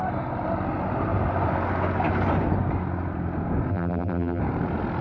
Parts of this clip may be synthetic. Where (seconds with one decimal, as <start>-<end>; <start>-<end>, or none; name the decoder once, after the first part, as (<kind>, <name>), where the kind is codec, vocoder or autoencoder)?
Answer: 3.7-4.4 (vocoder, BigVGAN v2)